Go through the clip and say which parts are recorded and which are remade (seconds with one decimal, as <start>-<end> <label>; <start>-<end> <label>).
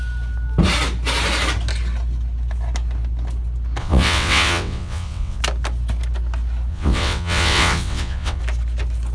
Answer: 0.0-3.8 recorded; 3.8-5.4 remade; 5.4-6.7 recorded; 6.7-8.4 remade; 8.4-9.1 recorded